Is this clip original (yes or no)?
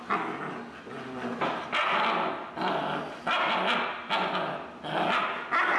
yes